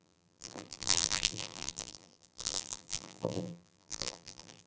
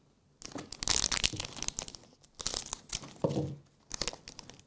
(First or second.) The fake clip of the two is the first